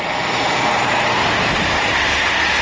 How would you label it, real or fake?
real